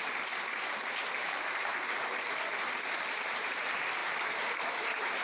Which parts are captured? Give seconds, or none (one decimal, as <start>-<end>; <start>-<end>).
1.7-2.7